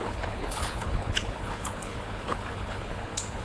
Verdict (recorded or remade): remade